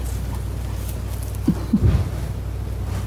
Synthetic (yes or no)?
no